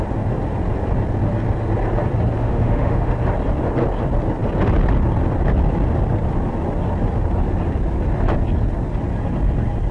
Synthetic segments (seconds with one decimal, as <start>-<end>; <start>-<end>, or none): 2.4-3.1